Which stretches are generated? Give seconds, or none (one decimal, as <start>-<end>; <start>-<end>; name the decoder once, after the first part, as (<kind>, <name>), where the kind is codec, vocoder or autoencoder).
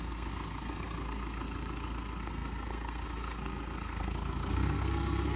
0.0-5.4 (codec, SNAC)